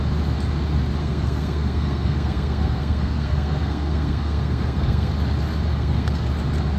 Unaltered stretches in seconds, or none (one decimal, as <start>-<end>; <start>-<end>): 0.0-1.0; 5.1-5.7; 6.3-6.8